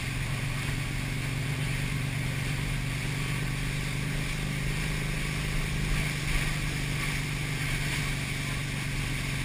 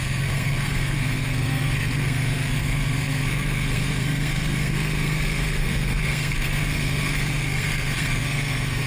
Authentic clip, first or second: first